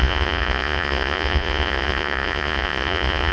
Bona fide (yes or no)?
no